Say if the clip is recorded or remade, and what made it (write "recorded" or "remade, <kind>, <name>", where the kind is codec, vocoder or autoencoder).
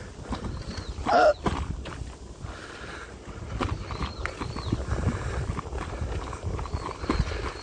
recorded